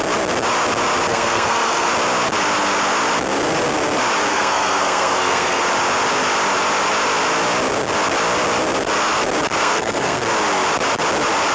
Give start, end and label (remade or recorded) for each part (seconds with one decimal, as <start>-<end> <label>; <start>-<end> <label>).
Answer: 0.0-1.1 recorded; 1.1-1.9 remade; 1.9-4.3 recorded; 4.3-5.6 remade; 5.6-9.6 recorded; 9.6-10.2 remade; 10.2-11.5 recorded